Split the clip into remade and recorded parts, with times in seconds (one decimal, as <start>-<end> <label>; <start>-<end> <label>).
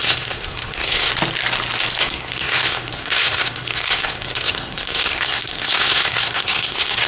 0.0-1.1 remade; 1.1-2.0 recorded; 2.0-7.1 remade